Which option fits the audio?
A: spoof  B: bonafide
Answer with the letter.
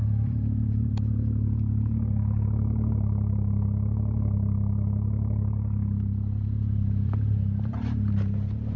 A